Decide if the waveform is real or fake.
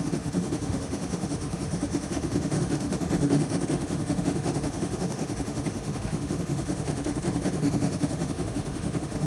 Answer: fake